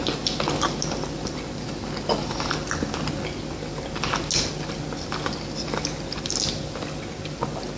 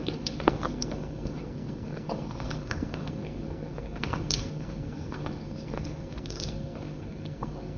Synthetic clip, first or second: second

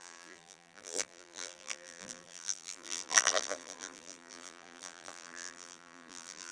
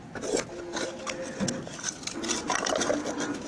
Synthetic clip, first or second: first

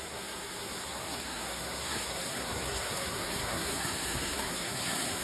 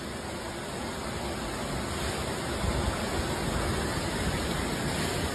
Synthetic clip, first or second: first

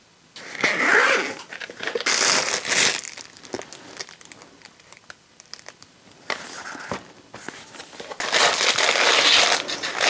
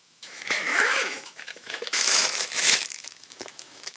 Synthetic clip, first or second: second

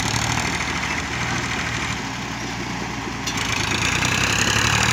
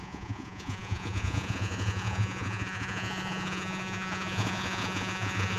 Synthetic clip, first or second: second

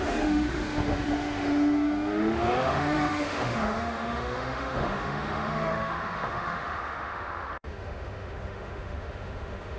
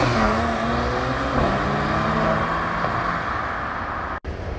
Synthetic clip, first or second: first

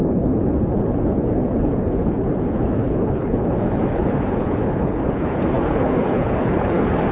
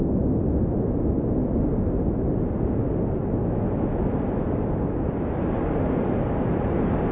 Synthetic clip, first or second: first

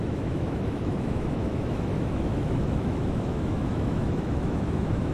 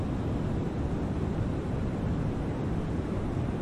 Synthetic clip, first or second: first